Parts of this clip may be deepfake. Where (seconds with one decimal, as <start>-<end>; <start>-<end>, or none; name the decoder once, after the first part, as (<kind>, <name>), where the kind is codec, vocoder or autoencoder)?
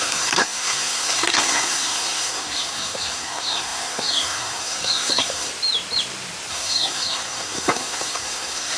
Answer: 0.0-5.5 (codec, SNAC); 6.5-8.8